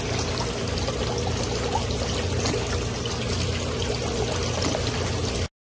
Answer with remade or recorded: recorded